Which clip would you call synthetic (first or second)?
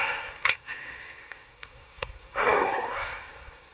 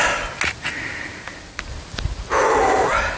first